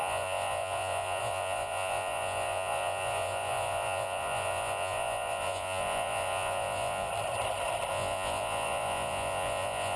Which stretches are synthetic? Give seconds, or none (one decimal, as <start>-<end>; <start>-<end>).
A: 0.0-7.1; 7.9-10.0